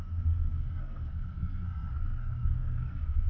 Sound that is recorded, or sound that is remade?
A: remade